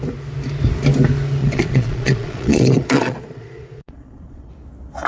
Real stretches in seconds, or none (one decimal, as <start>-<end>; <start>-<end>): 0.0-1.4; 4.5-5.1